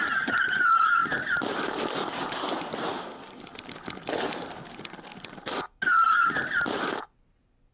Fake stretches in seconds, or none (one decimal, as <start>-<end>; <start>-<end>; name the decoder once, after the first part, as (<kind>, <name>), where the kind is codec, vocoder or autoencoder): none